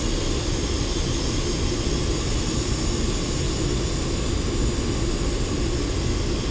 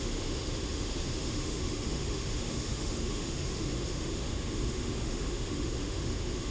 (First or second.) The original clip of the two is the first